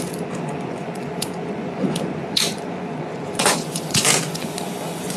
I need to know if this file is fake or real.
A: fake